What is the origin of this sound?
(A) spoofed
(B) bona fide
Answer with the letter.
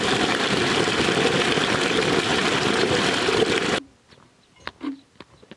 B